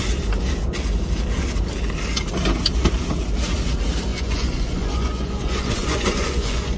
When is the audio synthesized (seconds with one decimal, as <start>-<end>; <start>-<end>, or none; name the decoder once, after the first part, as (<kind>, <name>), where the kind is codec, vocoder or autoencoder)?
4.1-6.8 (vocoder, Vocos)